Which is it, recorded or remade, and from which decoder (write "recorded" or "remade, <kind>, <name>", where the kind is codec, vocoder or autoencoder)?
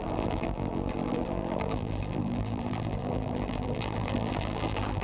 remade, vocoder, BigVGAN v2